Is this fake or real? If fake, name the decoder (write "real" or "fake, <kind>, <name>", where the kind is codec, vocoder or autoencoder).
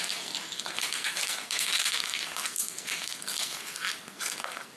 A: fake, codec, SNAC